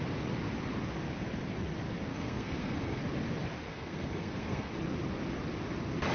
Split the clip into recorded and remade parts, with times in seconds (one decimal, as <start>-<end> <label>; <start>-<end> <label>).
0.0-2.1 recorded; 2.1-3.0 remade; 3.0-3.7 recorded; 3.7-4.7 remade; 4.7-6.1 recorded